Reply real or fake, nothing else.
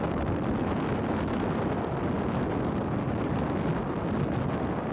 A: real